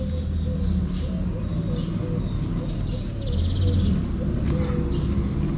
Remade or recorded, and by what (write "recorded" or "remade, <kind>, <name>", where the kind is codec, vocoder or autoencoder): recorded